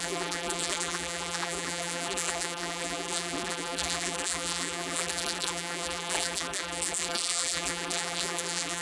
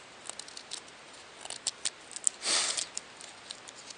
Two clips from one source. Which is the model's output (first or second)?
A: first